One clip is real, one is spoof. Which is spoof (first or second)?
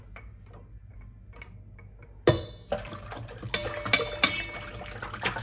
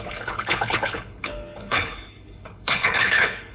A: second